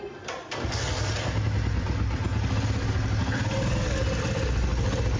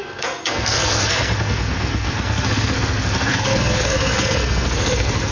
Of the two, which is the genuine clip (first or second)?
first